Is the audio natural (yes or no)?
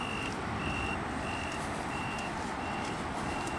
yes